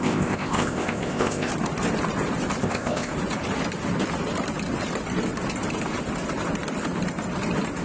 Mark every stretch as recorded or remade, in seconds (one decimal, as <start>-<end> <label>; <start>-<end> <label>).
0.0-1.5 remade; 1.5-2.6 recorded; 2.6-3.1 remade; 3.1-7.8 recorded